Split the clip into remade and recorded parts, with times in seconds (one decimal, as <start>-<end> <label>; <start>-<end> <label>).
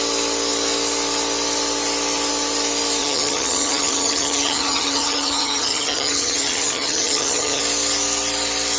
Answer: 0.0-3.0 recorded; 3.0-7.6 remade; 7.6-8.8 recorded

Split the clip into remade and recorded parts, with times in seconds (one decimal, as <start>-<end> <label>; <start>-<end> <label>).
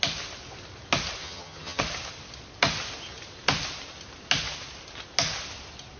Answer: 0.0-1.2 recorded; 1.2-1.8 remade; 1.8-6.0 recorded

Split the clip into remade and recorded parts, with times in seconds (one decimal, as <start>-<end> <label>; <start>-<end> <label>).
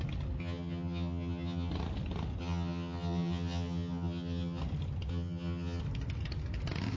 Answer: 0.0-0.4 recorded; 0.4-1.7 remade; 1.7-2.4 recorded; 2.4-4.6 remade; 4.6-5.1 recorded; 5.1-5.8 remade; 5.8-7.0 recorded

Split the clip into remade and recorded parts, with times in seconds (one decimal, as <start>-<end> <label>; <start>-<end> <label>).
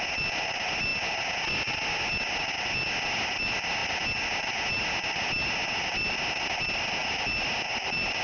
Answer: 0.0-8.2 recorded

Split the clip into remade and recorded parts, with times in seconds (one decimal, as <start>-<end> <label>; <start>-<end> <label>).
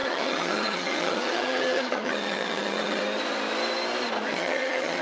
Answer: 0.0-3.0 remade; 3.0-4.3 recorded; 4.3-5.0 remade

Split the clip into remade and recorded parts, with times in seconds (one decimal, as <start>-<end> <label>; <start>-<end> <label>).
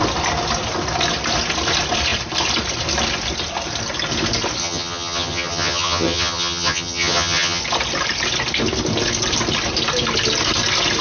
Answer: 0.0-4.6 recorded; 4.6-7.6 remade; 7.6-11.0 recorded